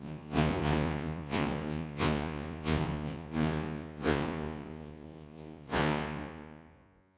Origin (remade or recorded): remade